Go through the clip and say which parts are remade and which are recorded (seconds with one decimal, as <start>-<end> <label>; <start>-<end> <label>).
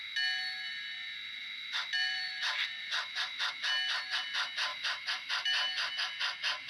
0.0-1.4 recorded; 1.4-3.5 remade; 3.5-4.7 recorded; 4.7-5.9 remade; 5.9-6.7 recorded